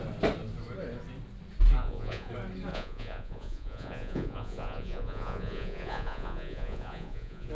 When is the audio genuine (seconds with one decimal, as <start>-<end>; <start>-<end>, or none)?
0.0-1.8; 2.3-2.7